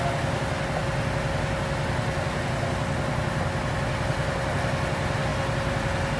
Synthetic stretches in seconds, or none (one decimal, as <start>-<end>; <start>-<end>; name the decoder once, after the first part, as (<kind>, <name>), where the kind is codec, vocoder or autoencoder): none